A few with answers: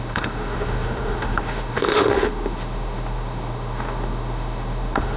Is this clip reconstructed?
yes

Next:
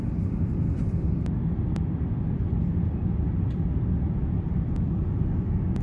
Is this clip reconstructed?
no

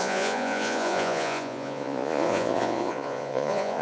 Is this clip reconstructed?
yes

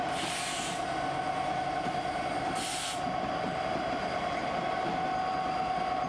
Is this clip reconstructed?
no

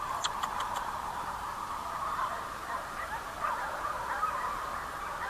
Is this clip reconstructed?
yes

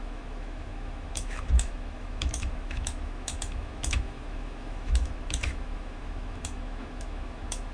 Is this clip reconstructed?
yes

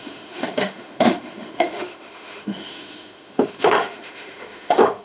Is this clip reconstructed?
yes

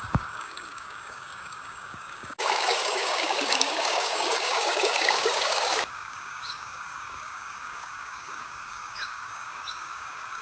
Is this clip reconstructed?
yes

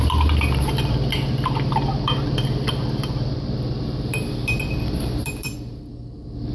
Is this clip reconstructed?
yes